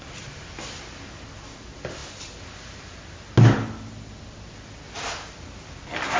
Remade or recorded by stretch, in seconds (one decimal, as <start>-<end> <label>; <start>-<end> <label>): 0.0-6.2 recorded